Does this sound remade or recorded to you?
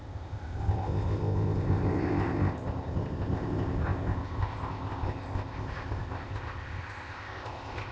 remade